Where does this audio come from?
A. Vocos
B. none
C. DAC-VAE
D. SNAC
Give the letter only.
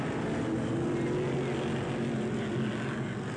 B